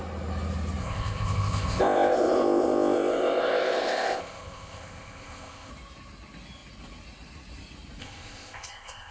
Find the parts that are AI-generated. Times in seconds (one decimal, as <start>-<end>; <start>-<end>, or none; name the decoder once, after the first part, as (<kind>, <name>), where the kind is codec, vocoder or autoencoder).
0.8-5.7 (codec, ZipCodec); 8.0-9.1